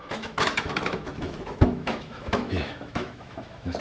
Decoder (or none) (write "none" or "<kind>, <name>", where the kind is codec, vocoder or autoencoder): autoencoder, DAC-VAE